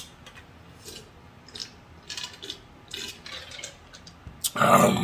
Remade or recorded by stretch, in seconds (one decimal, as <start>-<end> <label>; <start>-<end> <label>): 0.0-5.0 recorded